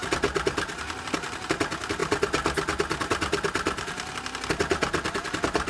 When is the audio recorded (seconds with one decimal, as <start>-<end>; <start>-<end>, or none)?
0.0-5.7